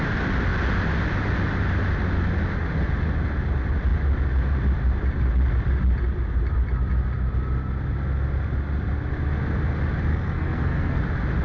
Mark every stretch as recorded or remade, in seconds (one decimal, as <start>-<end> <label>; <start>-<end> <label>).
0.0-10.1 recorded; 10.1-11.0 remade; 11.0-11.4 recorded